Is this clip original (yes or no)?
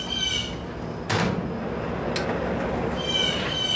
yes